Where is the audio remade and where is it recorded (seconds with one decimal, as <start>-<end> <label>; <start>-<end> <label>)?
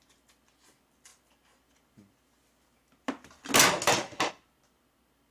0.0-5.3 recorded